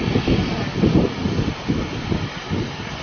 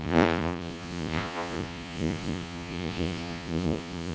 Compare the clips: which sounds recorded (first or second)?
first